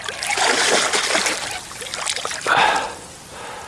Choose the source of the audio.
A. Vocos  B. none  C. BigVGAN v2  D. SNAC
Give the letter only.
B